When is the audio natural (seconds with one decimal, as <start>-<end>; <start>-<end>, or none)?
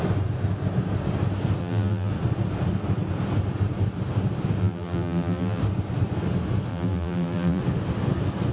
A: 0.0-1.6; 2.1-4.6; 5.6-6.7; 7.6-8.5